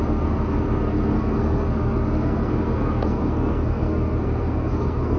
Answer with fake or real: fake